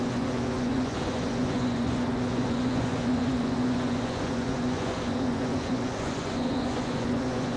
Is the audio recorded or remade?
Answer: remade